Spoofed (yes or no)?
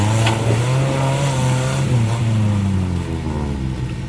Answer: no